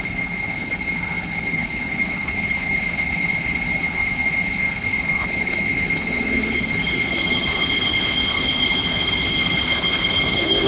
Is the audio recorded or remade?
remade